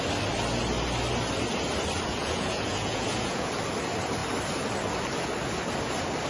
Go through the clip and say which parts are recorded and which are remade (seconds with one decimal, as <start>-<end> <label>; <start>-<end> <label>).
0.0-2.1 recorded; 2.1-3.5 remade; 3.5-6.3 recorded